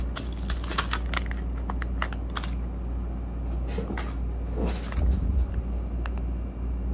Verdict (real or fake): real